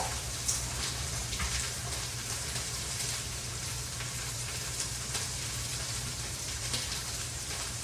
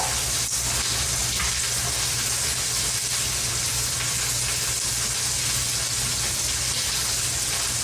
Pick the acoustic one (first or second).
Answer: second